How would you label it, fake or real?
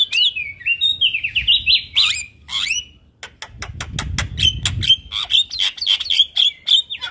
real